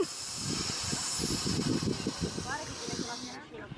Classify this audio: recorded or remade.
recorded